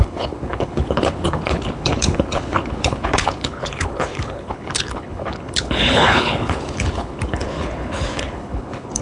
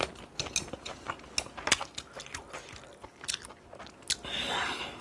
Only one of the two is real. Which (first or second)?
second